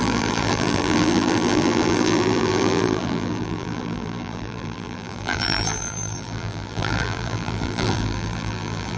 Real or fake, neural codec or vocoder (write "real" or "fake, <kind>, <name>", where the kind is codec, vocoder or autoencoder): fake, vocoder, BigVGAN v2